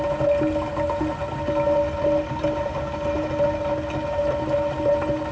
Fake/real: real